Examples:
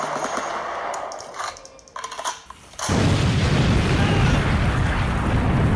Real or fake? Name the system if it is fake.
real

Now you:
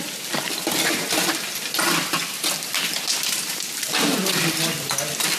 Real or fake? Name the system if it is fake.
real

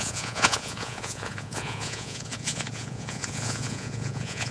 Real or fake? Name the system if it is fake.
fake, vocoder, Vocos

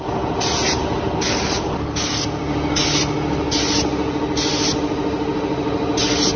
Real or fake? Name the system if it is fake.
real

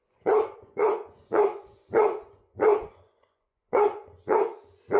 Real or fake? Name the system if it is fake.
fake, vocoder, Vocos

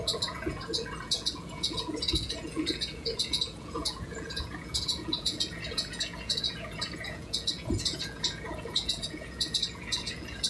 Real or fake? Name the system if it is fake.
fake, vocoder, Vocos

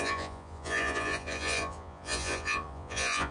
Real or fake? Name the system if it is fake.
fake, vocoder, Vocos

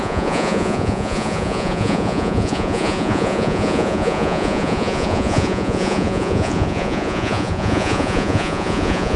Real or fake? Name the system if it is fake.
fake, vocoder, Vocos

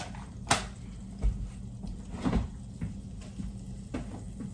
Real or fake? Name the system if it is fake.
real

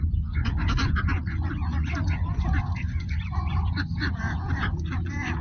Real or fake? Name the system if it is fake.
fake, vocoder, Vocos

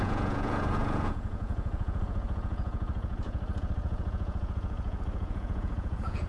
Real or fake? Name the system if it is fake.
fake, vocoder, Vocos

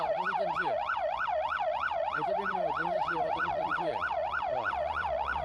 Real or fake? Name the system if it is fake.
fake, vocoder, Vocos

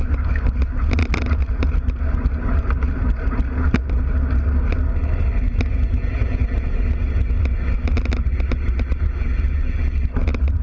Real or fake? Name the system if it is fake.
real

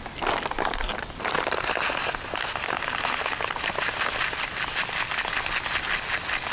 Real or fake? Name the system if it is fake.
real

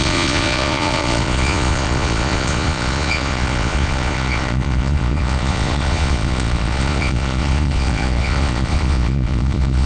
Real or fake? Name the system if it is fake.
fake, vocoder, Vocos